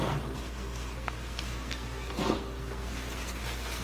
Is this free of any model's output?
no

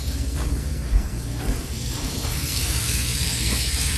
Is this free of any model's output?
no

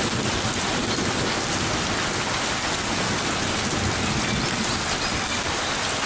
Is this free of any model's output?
yes